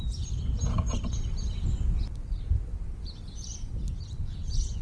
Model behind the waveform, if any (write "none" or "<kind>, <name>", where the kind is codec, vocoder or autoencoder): vocoder, BigVGAN v2